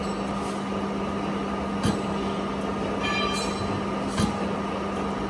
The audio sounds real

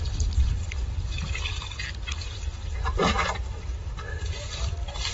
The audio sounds real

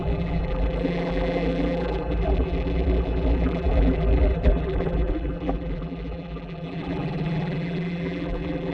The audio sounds fake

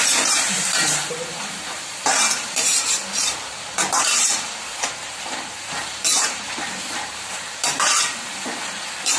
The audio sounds fake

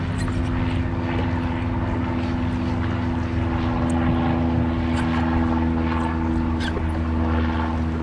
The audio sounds real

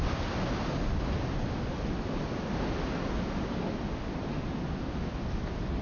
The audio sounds real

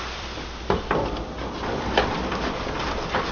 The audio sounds fake